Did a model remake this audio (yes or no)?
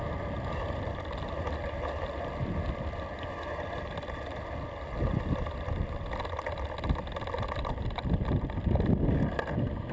no